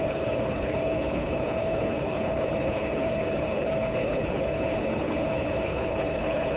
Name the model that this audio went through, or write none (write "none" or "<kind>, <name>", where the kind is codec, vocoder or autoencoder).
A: codec, HILCodec